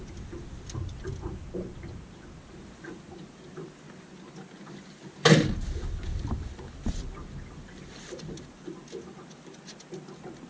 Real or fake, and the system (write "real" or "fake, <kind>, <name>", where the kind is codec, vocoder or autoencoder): real